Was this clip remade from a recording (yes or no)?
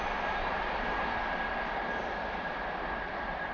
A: no